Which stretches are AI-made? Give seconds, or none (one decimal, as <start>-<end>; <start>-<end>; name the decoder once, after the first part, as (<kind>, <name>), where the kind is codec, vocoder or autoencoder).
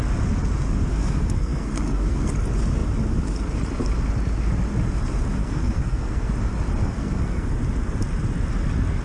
0.9-2.3 (codec, SNAC); 5.4-6.3; 6.8-7.5